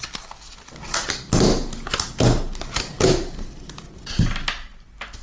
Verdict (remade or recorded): recorded